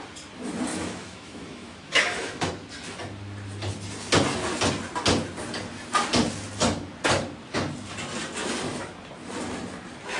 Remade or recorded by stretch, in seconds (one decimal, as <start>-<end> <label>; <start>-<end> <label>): 0.0-0.7 recorded; 0.7-2.5 remade; 2.5-10.2 recorded